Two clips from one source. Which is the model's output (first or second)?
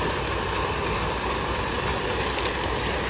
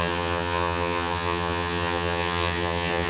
second